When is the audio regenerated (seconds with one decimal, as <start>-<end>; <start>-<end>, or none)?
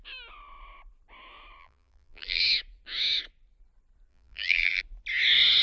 1.6-2.4; 4.1-4.8